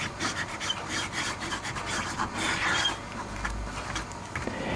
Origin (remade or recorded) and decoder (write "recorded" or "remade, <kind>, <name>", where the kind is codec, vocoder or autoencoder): remade, vocoder, BigVGAN v2